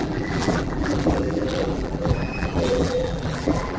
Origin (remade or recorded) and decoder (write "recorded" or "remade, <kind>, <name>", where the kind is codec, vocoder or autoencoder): remade, vocoder, BigVGAN v2